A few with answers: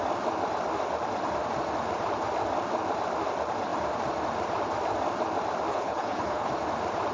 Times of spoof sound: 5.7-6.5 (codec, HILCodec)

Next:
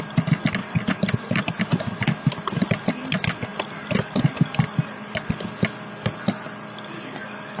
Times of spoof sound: none

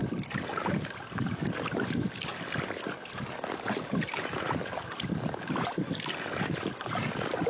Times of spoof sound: none

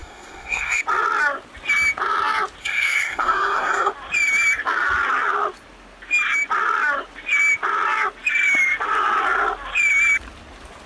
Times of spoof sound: 0.0-0.8 (codec, SNAC); 2.6-3.9

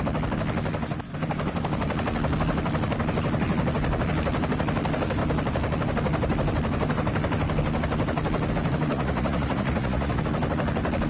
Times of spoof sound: 8.9-10.2 (vocoder, Vocos)

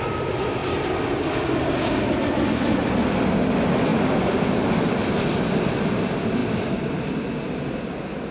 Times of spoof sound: none

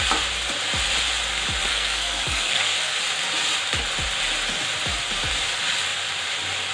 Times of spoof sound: 1.7-3.0 (codec, SNAC)